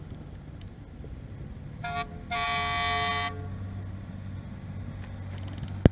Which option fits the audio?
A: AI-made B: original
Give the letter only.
B